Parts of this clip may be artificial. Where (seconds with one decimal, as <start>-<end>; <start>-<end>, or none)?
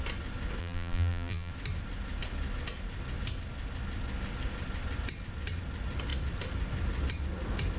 0.6-1.5